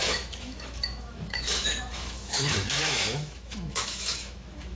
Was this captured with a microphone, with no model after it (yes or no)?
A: no